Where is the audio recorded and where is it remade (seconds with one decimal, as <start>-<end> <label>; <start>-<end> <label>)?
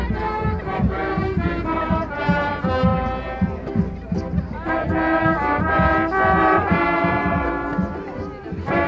0.0-1.0 recorded; 1.0-2.1 remade; 2.1-2.9 recorded; 2.9-3.5 remade; 3.5-6.4 recorded; 6.4-7.5 remade; 7.5-8.9 recorded